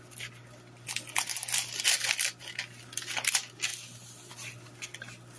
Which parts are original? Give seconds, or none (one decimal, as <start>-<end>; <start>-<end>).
0.0-1.4; 2.4-5.4